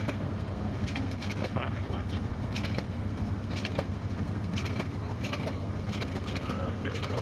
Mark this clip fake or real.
fake